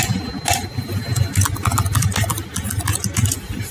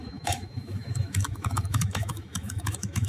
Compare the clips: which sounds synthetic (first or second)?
second